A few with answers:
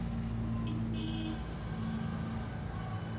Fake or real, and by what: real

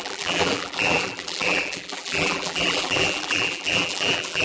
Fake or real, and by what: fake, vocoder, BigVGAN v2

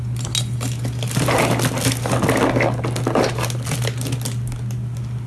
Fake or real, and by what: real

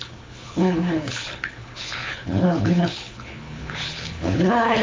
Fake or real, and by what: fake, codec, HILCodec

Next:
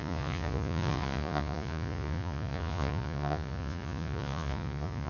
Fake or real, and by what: fake, vocoder, Vocos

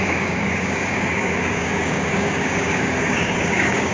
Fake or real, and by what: fake, codec, DAC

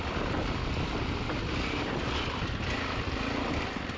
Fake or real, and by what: real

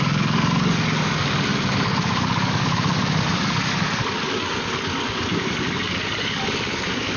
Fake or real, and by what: fake, codec, DAC